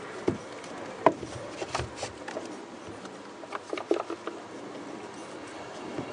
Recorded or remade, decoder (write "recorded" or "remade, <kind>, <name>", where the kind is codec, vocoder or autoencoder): recorded